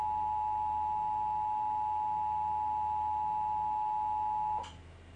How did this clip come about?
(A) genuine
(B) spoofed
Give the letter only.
A